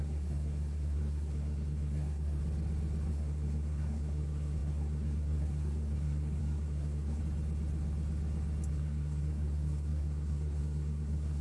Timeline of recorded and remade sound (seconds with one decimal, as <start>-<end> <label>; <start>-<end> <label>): 0.0-2.4 remade; 2.4-3.1 recorded; 3.1-7.2 remade; 7.2-8.7 recorded; 8.7-11.4 remade